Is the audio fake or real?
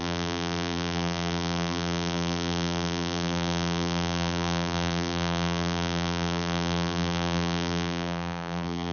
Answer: fake